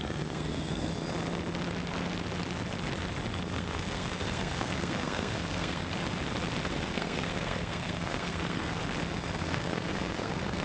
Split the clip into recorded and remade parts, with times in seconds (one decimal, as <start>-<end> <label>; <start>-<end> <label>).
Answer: 0.0-0.9 remade; 0.9-3.4 recorded; 3.4-5.9 remade; 5.9-6.7 recorded; 6.7-8.8 remade; 8.8-9.4 recorded; 9.4-10.6 remade